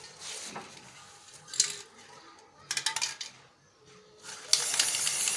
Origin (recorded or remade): recorded